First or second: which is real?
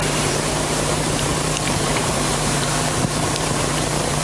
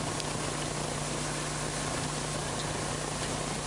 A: second